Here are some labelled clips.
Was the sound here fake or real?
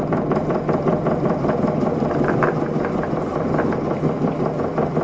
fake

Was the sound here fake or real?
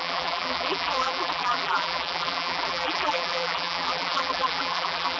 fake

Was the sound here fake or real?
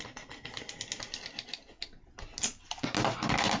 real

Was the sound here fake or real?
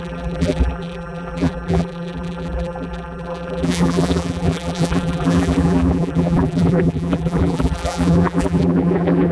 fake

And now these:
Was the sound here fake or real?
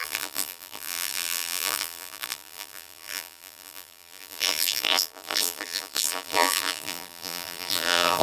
fake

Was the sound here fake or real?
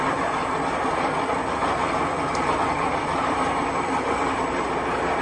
fake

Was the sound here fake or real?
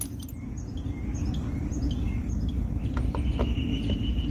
real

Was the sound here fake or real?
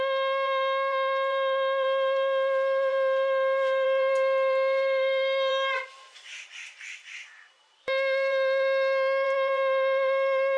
fake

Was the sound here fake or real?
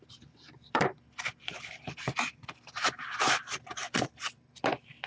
fake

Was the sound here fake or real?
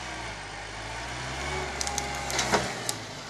real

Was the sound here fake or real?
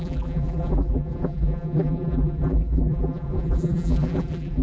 fake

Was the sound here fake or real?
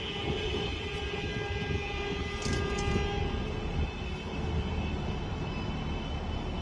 real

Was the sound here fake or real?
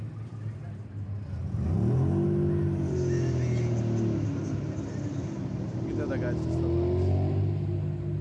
real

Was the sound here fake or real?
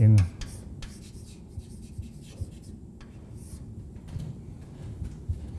real